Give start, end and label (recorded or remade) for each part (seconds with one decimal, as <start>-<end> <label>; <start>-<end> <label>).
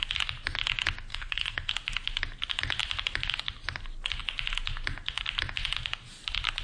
0.0-1.1 recorded; 1.1-1.7 remade; 1.7-6.6 recorded